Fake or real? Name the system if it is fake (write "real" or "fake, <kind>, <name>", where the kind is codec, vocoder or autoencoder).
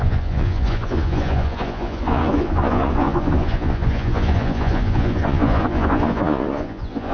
fake, vocoder, Vocos